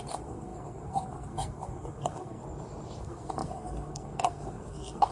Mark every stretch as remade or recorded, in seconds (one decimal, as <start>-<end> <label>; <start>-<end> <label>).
0.0-2.4 remade; 2.4-3.0 recorded; 3.0-5.1 remade